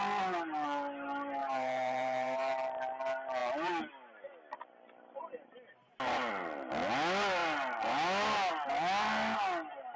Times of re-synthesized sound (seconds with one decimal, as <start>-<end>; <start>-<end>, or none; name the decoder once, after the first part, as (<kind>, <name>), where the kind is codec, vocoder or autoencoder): 1.4-2.5 (vocoder, BigVGAN v2)